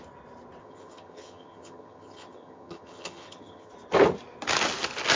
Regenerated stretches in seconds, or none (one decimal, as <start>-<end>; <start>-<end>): 0.6-3.7